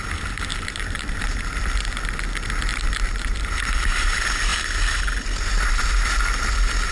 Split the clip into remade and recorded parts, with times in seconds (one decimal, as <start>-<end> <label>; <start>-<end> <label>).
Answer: 0.0-0.5 recorded; 0.5-1.2 remade; 1.2-2.7 recorded; 2.7-4.1 remade; 4.1-4.5 recorded; 4.5-5.0 remade; 5.0-6.9 recorded